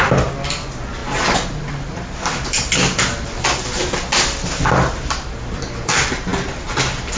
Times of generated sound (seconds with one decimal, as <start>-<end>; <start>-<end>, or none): none